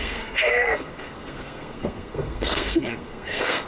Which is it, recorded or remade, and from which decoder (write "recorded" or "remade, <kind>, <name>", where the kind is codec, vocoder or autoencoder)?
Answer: remade, codec, SNAC